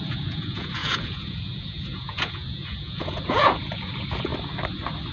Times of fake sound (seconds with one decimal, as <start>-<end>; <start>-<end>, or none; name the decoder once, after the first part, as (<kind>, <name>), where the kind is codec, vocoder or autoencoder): 0.0-4.3 (vocoder, Vocos)